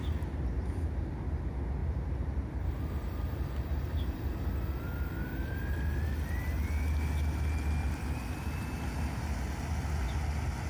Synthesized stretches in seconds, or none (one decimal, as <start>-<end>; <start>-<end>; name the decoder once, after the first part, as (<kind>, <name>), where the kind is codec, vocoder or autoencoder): 1.8-5.7 (vocoder, BigVGAN v2); 7.8-8.8